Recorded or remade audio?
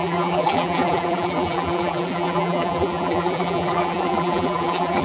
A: remade